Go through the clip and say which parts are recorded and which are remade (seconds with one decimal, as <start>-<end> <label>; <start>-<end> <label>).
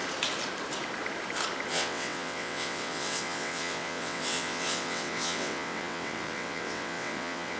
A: 0.0-1.7 recorded; 1.7-7.6 remade